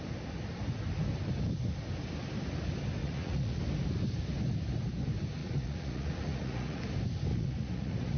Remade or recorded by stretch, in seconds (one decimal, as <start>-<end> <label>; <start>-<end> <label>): 0.0-3.0 recorded; 3.0-3.6 remade; 3.6-5.4 recorded; 5.4-6.8 remade; 6.8-7.3 recorded; 7.3-8.2 remade